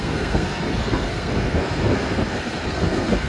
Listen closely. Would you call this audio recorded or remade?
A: remade